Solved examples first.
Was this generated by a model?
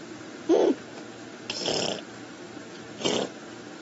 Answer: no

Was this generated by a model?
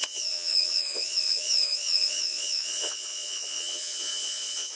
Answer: yes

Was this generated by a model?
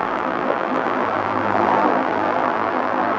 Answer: yes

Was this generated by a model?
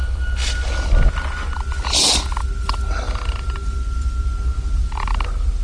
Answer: no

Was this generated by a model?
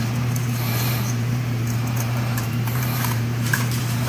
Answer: yes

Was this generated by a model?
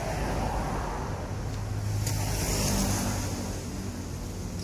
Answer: no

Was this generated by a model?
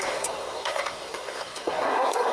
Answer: yes